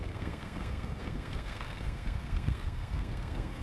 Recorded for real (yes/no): no